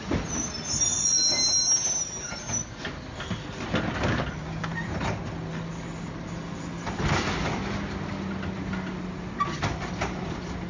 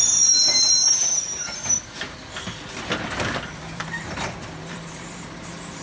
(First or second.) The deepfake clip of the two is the second